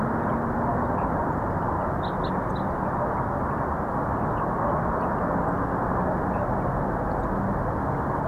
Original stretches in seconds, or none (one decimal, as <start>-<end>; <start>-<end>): 0.0-8.3